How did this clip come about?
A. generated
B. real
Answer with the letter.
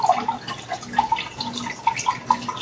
B